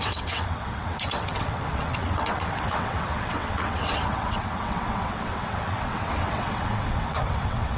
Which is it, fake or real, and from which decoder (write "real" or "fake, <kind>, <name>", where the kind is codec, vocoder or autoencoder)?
fake, vocoder, WaveNeXt